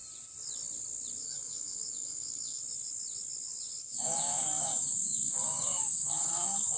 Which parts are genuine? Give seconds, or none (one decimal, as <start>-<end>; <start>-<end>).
0.0-1.2; 2.6-3.8